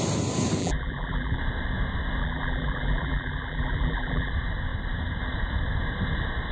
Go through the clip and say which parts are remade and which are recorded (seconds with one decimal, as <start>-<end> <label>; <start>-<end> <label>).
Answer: 0.0-0.6 recorded; 0.6-1.4 remade; 1.4-2.2 recorded; 2.2-4.3 remade; 4.3-6.5 recorded